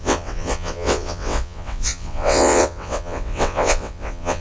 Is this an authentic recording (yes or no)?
no